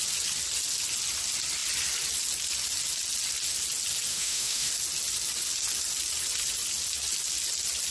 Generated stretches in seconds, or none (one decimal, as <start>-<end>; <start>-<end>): 4.1-4.7